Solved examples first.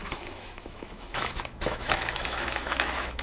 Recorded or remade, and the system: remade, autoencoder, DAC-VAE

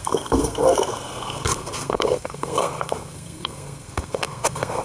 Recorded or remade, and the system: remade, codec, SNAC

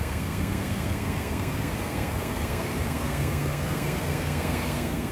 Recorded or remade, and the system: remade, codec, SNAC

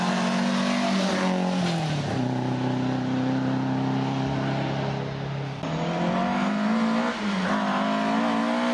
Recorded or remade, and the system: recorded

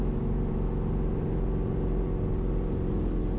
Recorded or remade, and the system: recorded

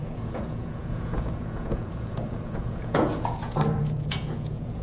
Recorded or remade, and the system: remade, vocoder, Vocos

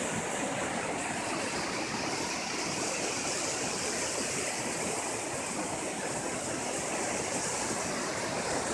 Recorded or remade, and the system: recorded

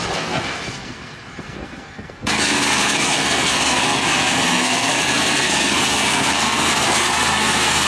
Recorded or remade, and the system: remade, codec, SNAC